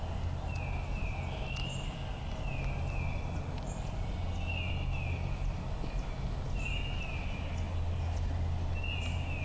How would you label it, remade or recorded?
recorded